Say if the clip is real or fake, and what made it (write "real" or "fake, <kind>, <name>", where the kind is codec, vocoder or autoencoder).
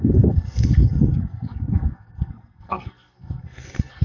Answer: fake, codec, SNAC